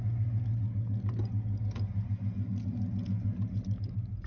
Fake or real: real